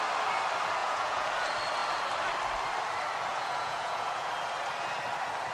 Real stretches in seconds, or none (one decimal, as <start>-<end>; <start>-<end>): 0.0-0.8; 1.3-3.3; 4.3-5.5